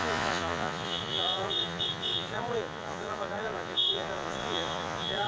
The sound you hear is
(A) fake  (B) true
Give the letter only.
A